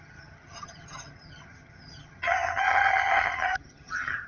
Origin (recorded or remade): remade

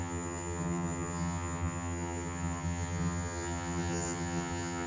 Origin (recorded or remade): remade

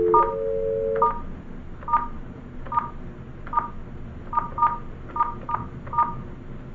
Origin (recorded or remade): recorded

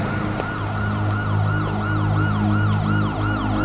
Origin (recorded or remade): recorded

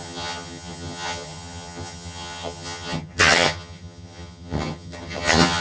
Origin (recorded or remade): remade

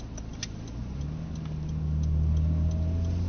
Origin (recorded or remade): recorded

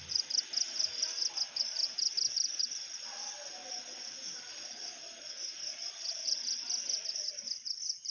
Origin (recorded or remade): recorded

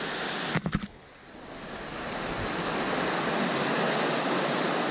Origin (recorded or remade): recorded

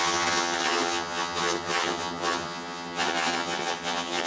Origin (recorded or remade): remade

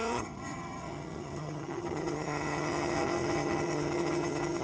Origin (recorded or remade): remade